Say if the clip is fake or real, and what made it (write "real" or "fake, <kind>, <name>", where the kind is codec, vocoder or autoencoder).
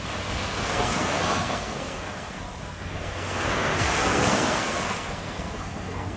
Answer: fake, codec, SNAC